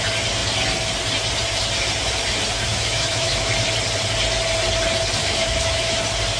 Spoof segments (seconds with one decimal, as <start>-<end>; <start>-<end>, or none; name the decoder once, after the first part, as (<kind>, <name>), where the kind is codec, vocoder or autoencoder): 2.7-3.5 (autoencoder, DAC-VAE); 5.2-6.0